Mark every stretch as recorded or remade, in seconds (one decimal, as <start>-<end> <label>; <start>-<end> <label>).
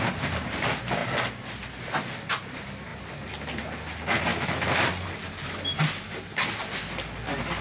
0.0-7.6 recorded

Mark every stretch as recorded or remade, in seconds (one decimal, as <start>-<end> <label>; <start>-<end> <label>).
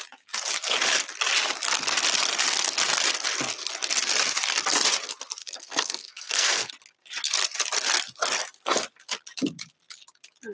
0.0-5.4 recorded; 5.4-6.7 remade; 6.7-10.5 recorded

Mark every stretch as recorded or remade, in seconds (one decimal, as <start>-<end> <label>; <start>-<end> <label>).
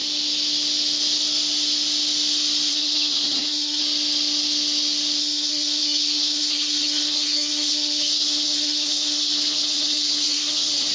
0.0-2.7 recorded; 2.7-3.8 remade; 3.8-5.2 recorded; 5.2-10.9 remade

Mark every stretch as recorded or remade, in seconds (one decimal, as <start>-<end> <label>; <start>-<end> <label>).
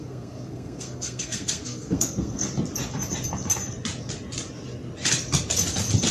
0.0-2.4 remade; 2.4-6.1 recorded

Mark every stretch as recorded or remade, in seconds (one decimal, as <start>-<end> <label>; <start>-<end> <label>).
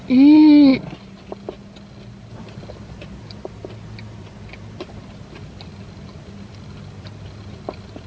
0.0-8.1 recorded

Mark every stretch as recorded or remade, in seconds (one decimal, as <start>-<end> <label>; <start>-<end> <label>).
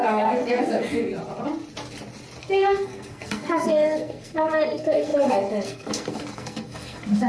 0.0-1.1 remade; 1.1-2.4 recorded; 2.4-7.3 remade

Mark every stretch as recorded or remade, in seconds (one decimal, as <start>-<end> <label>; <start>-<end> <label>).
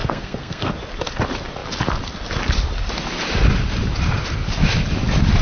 0.0-0.7 remade; 0.7-5.4 recorded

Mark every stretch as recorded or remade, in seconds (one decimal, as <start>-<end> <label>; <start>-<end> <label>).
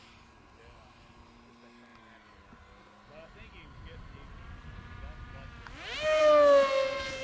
0.0-7.2 recorded